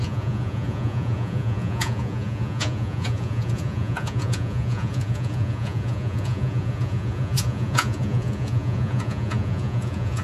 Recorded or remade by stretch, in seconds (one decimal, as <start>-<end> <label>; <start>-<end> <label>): 0.0-10.2 remade